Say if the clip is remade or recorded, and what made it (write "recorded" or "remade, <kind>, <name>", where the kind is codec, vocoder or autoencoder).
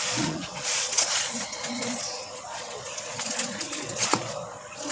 remade, vocoder, Vocos